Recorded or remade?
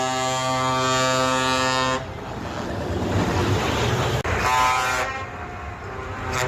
recorded